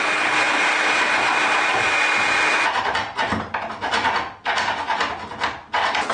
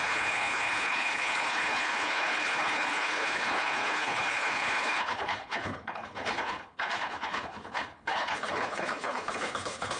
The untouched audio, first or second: first